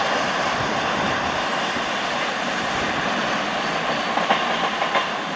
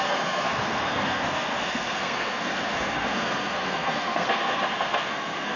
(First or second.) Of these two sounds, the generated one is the second